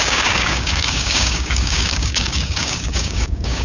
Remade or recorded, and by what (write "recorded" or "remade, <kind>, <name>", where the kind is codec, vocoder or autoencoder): remade, codec, DAC